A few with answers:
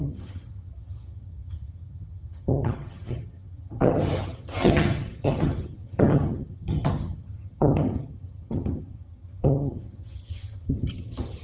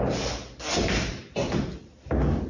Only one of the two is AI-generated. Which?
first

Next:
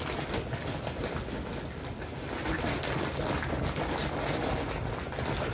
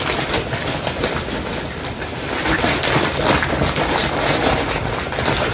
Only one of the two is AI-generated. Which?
second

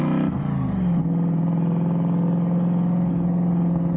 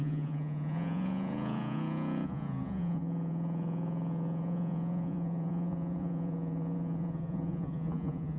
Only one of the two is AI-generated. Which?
second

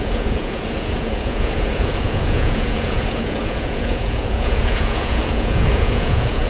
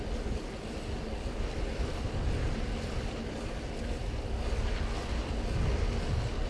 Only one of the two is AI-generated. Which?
first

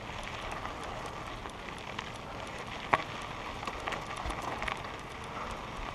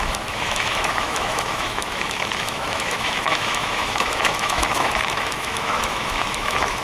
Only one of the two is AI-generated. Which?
second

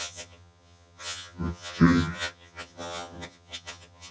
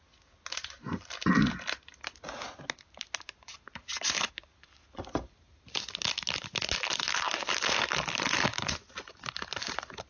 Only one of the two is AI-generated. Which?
first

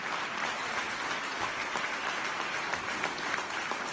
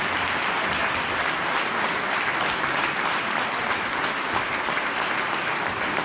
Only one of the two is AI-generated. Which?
second